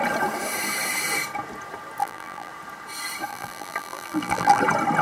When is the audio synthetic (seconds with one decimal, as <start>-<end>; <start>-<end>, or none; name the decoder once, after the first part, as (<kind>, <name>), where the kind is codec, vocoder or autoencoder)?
2.0-2.5 (vocoder, BigVGAN v2); 3.3-4.6